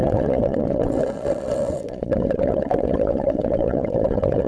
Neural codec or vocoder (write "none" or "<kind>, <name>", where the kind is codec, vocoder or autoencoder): vocoder, WaveNeXt